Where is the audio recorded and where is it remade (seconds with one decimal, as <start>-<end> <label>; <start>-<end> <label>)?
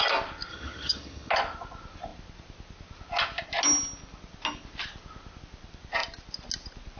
0.0-0.5 recorded; 0.5-1.3 remade; 1.3-7.0 recorded